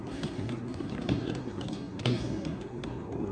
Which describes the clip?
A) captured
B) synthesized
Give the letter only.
B